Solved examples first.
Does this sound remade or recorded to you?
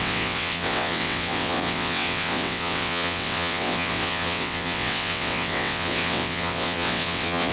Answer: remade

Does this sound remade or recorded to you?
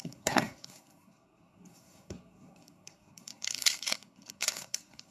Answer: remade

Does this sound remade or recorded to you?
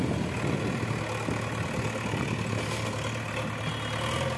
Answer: recorded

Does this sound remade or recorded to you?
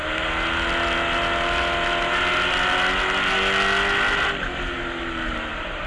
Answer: recorded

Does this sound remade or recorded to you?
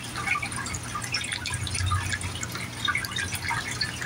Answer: recorded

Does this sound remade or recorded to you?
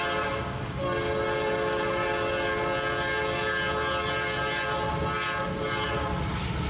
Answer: recorded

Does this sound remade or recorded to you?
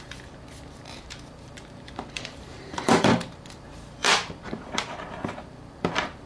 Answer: remade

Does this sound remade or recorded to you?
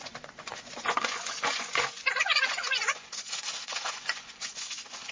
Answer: remade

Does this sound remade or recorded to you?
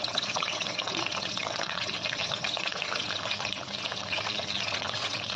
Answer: remade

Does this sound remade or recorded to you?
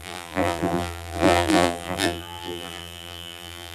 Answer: remade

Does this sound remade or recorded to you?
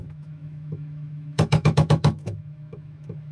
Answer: remade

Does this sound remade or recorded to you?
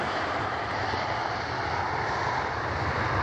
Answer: recorded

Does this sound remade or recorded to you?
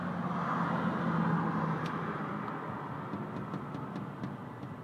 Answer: recorded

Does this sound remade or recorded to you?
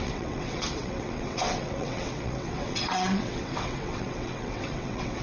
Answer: remade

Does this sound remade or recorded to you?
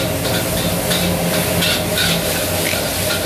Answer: recorded